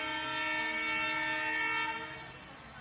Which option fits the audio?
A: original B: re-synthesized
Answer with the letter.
A